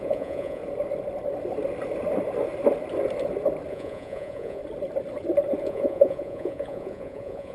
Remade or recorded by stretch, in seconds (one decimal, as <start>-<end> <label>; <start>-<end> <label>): 0.0-0.6 remade; 0.6-3.7 recorded; 3.7-4.6 remade; 4.6-5.6 recorded; 5.6-7.5 remade